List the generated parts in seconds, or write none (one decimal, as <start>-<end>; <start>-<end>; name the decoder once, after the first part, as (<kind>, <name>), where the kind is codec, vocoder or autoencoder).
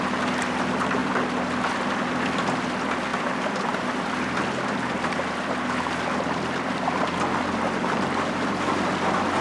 3.1-4.9 (vocoder, BigVGAN v2)